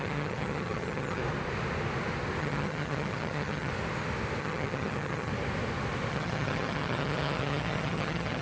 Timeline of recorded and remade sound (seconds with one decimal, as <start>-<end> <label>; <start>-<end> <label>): 0.0-1.2 remade; 1.2-2.4 recorded; 2.4-3.7 remade; 3.7-4.4 recorded; 4.4-5.3 remade; 5.3-6.1 recorded; 6.1-8.4 remade